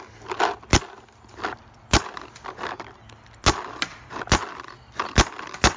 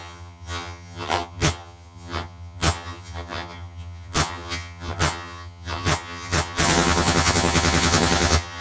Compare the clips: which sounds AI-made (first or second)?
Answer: second